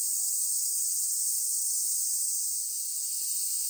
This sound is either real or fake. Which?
real